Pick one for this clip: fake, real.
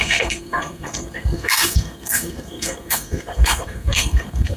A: fake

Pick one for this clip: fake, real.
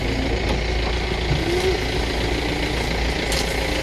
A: real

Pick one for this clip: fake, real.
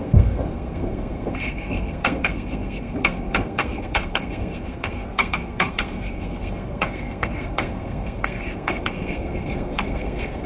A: fake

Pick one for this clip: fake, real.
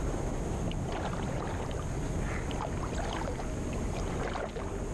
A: real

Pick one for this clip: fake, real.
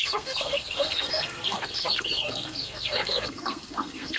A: fake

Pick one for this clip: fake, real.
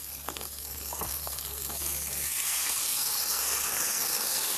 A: fake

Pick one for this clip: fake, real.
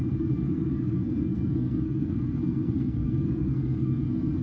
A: fake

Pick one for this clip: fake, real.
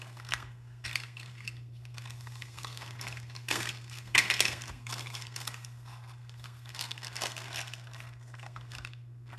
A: fake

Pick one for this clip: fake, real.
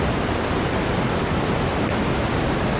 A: real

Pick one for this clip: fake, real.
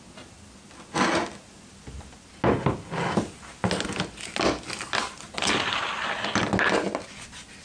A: real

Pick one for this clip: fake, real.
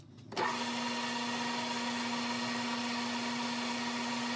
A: real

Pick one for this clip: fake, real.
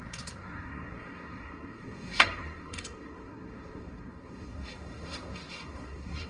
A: fake